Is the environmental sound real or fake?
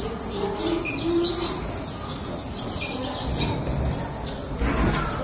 real